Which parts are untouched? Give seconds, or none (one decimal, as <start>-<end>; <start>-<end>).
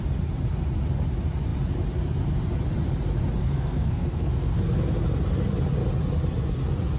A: 0.0-3.4; 4.6-7.0